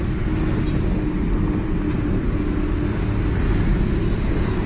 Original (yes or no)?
yes